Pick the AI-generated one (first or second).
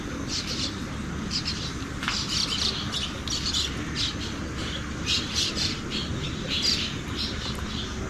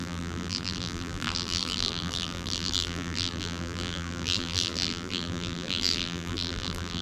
second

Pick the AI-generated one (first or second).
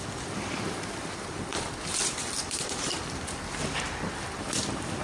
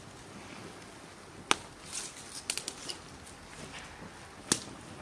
first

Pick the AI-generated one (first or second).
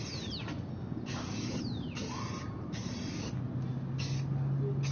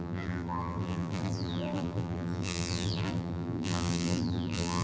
second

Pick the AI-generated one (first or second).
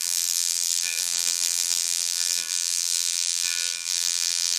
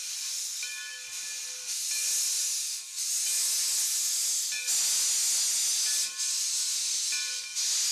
first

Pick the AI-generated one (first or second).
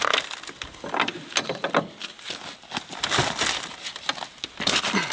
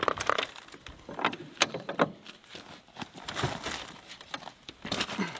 second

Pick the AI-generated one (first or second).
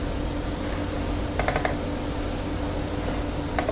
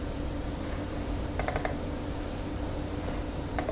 second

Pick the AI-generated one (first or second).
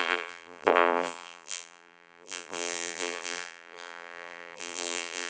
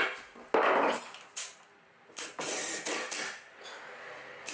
first